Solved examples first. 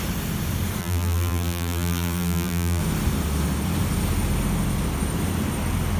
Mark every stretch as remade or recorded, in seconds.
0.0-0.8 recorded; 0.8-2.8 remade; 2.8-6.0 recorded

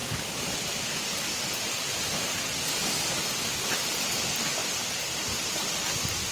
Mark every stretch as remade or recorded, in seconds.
0.0-6.3 recorded

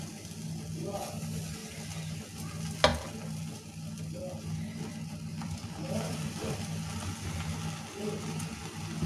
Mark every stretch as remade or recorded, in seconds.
0.0-5.3 recorded; 5.3-6.8 remade; 6.8-9.1 recorded

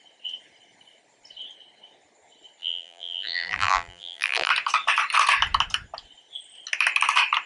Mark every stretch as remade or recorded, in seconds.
0.0-2.6 recorded; 2.6-4.5 remade; 4.5-7.5 recorded

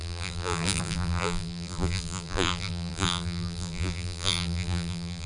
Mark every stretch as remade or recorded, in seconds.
0.0-5.3 remade